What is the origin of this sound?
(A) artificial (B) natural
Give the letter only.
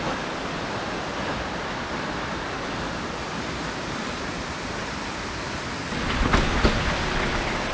B